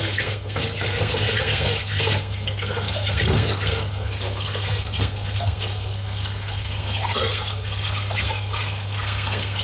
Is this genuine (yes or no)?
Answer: no